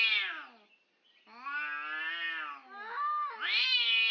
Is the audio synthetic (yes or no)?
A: no